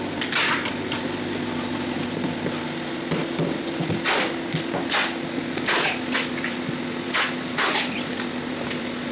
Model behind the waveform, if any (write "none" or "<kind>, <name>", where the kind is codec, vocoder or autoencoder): none